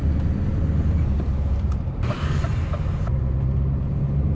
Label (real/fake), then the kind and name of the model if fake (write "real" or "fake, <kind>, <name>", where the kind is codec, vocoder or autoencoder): real